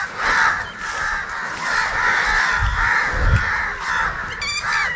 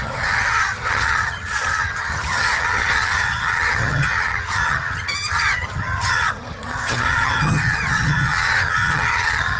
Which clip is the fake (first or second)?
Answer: second